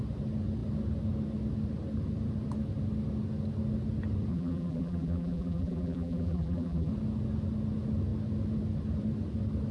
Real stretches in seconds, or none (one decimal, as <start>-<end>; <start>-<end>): 0.0-4.3; 6.9-9.7